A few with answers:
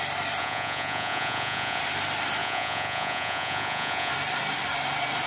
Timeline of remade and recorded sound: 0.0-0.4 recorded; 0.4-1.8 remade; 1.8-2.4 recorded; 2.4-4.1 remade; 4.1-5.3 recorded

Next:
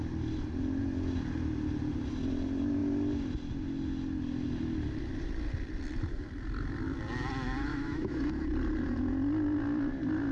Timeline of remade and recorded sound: 0.0-7.7 recorded; 7.7-8.3 remade; 8.3-10.3 recorded

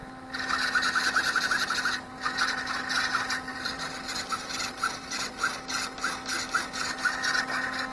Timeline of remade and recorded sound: 0.0-3.5 recorded; 3.5-5.7 remade; 5.7-7.9 recorded